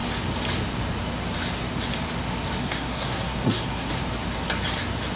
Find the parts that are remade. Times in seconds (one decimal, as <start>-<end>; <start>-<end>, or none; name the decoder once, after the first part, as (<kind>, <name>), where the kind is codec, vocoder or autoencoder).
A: 2.6-3.9 (codec, SNAC)

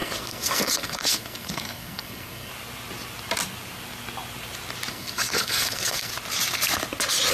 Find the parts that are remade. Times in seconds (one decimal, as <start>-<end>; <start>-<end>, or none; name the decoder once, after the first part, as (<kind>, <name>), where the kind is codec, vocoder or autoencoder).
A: 0.0-2.5 (codec, SNAC); 4.9-6.1

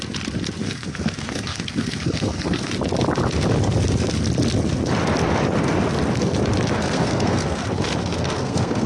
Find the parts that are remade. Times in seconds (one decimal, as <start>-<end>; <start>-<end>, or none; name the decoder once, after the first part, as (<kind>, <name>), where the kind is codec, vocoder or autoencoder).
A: 0.6-2.7 (codec, SNAC); 6.8-7.6; 8.0-8.9